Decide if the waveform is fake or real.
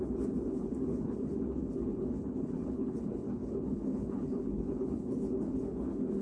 fake